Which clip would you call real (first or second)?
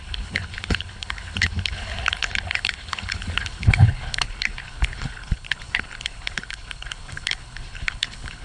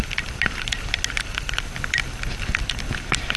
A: second